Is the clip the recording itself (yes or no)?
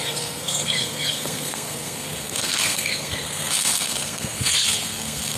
no